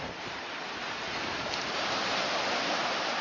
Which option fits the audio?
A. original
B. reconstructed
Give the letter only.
B